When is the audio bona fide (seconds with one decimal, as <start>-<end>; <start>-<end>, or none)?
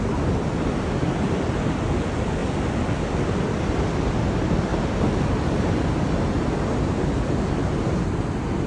0.0-8.7